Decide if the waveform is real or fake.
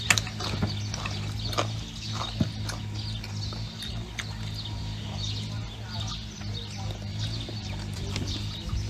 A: real